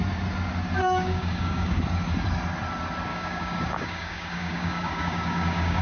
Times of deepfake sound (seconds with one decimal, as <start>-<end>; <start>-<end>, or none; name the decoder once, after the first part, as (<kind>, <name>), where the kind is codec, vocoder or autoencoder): 0.8-1.8 (codec, DAC); 3.1-5.8